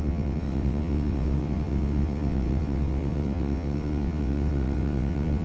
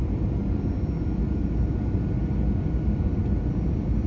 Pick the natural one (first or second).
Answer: second